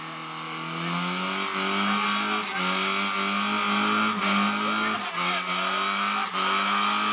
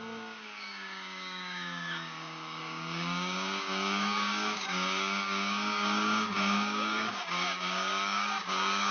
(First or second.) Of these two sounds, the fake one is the second